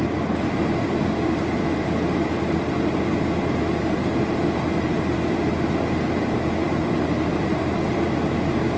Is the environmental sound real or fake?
real